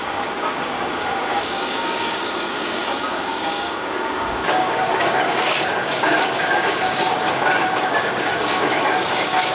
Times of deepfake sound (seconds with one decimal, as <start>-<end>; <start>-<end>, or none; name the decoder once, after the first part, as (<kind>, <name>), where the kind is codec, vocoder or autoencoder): 0.0-9.5 (codec, DAC)